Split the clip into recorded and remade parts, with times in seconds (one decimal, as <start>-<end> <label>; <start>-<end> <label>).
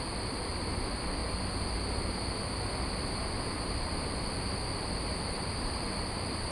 0.0-1.2 remade; 1.2-3.7 recorded; 3.7-6.5 remade